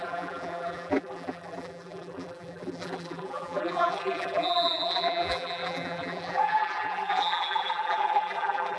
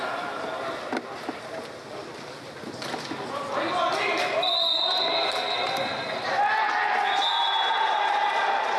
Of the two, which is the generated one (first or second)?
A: first